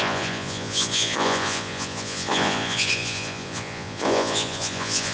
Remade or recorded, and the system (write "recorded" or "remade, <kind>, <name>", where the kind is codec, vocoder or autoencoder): remade, vocoder, Vocos